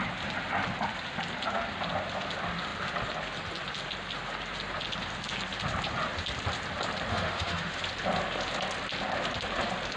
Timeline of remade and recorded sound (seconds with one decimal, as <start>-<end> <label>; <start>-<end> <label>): 0.0-7.1 recorded; 7.1-7.8 remade; 7.8-10.0 recorded